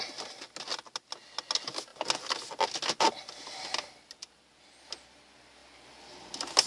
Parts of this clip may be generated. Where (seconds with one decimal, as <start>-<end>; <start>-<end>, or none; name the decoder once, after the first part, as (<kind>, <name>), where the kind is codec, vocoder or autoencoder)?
none